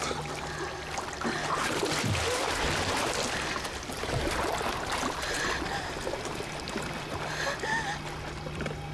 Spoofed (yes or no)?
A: no